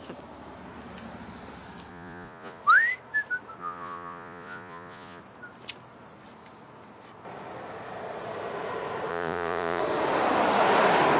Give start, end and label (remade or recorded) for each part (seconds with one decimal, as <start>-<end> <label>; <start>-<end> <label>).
0.0-1.9 recorded; 1.9-2.6 remade; 2.6-3.6 recorded; 3.6-5.2 remade; 5.2-9.1 recorded; 9.1-9.8 remade; 9.8-11.2 recorded